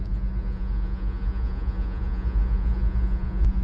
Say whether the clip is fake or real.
fake